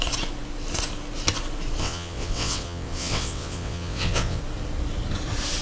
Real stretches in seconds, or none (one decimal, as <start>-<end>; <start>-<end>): 0.0-1.8; 4.4-5.6

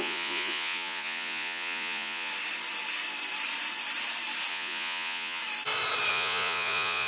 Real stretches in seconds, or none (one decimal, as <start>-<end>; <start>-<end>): 2.3-4.5; 5.4-6.1

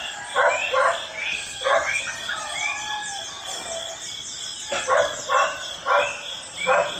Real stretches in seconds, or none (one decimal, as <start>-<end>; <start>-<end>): 0.0-1.2; 2.0-7.0

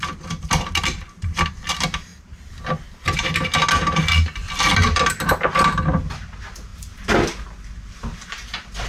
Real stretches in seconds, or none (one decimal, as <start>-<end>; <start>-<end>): 0.0-8.9

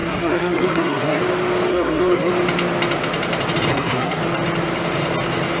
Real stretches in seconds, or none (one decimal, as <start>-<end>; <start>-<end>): 1.2-1.7; 2.3-3.7; 4.2-5.6

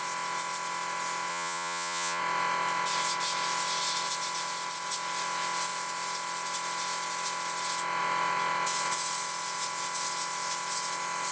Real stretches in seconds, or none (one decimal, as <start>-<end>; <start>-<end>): 0.0-1.3; 2.2-11.3